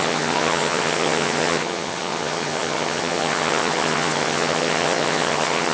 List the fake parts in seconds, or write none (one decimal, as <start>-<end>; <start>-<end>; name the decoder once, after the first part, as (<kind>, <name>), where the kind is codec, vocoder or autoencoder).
0.0-5.7 (vocoder, HiFi-GAN)